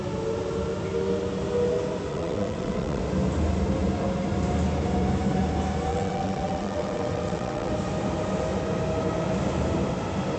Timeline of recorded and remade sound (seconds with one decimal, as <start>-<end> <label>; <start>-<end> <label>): 0.0-2.1 recorded; 2.1-3.0 remade; 3.0-5.9 recorded; 5.9-7.7 remade; 7.7-10.4 recorded